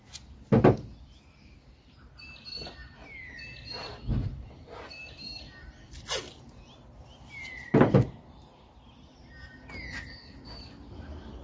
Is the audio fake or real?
real